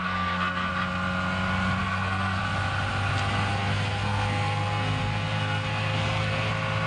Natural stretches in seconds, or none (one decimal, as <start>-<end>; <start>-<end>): 0.7-1.8; 2.4-3.5; 6.5-6.9